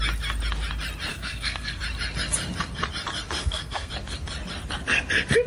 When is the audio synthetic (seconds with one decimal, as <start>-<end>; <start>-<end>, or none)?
1.1-1.8; 3.4-3.9